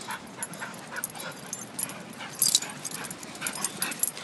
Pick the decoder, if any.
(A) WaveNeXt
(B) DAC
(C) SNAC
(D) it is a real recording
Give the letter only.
D